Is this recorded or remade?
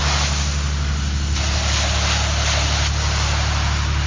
recorded